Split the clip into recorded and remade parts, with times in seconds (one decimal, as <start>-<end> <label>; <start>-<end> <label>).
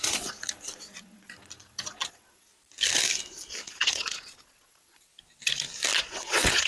0.0-2.5 remade; 2.5-3.7 recorded; 3.7-5.1 remade; 5.1-6.0 recorded; 6.0-6.7 remade